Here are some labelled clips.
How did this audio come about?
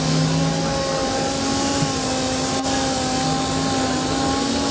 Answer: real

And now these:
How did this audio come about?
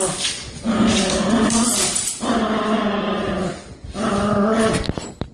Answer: real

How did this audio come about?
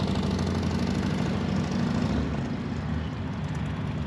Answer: real